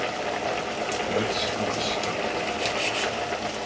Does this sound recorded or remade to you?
recorded